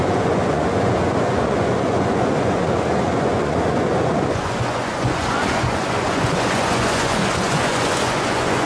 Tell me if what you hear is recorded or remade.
remade